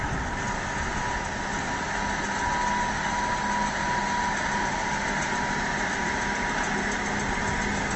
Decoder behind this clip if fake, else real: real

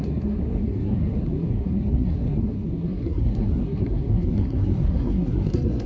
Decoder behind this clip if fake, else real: fake, codec, SNAC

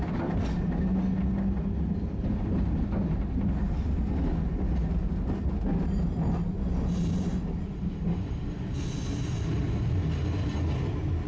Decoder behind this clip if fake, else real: real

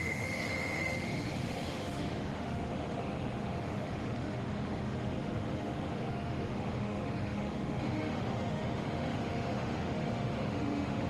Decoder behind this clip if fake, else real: fake, autoencoder, DAC-VAE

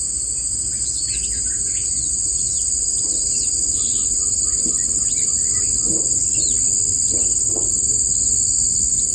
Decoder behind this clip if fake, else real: real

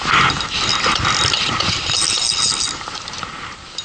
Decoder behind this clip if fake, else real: fake, vocoder, BigVGAN v2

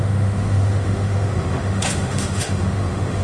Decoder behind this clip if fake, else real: fake, autoencoder, DAC-VAE